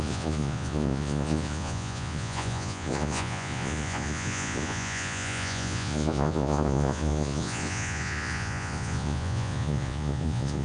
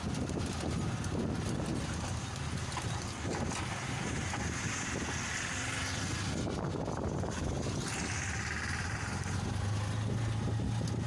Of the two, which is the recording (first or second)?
second